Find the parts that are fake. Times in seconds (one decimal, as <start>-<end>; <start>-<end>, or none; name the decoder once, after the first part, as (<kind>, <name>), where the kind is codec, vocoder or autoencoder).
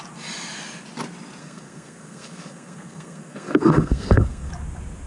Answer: 1.4-4.5 (codec, SNAC)